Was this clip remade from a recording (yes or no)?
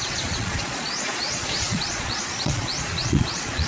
yes